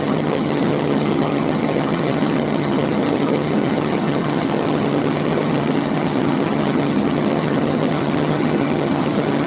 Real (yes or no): no